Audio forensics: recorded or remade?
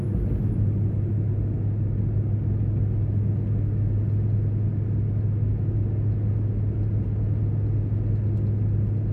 recorded